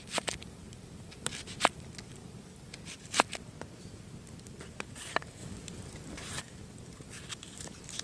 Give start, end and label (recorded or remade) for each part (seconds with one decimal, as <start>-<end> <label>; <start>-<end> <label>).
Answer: 0.0-5.4 recorded; 5.4-6.4 remade; 6.4-8.0 recorded